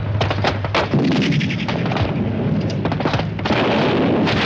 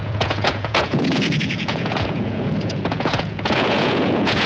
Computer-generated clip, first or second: second